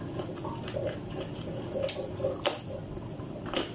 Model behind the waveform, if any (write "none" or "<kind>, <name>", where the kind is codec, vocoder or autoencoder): none